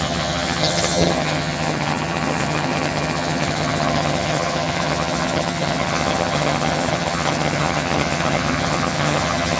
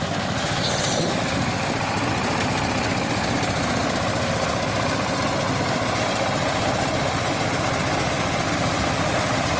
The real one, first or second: second